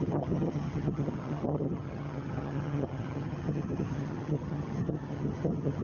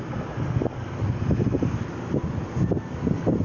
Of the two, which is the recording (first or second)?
second